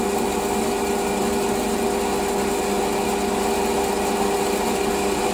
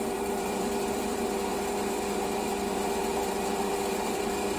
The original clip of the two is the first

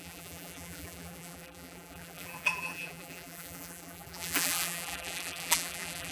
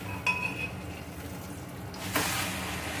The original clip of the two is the second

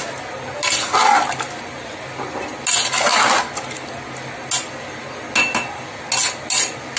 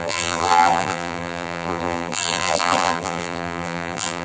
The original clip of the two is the first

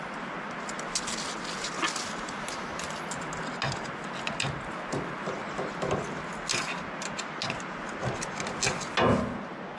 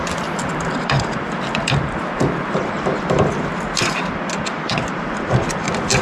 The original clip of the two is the first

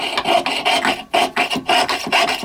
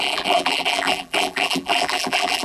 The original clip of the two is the first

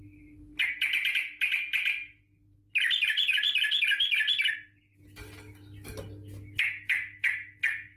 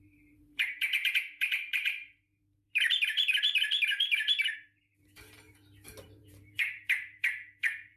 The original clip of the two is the first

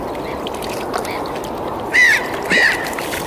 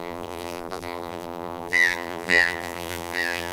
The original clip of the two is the first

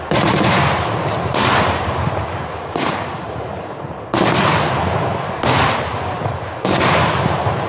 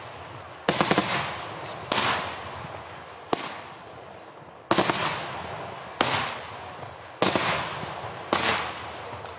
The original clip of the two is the second